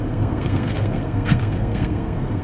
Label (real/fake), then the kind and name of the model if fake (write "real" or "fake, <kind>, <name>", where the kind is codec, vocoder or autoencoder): fake, codec, SNAC